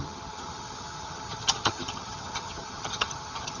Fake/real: fake